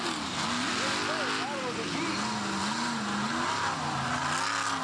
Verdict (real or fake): real